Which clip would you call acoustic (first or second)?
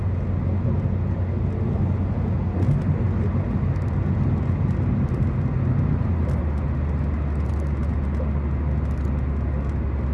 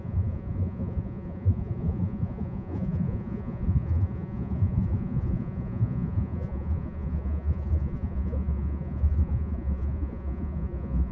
first